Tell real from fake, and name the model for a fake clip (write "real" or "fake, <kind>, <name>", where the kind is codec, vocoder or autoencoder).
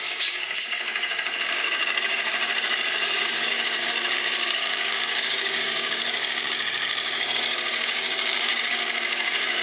fake, codec, DAC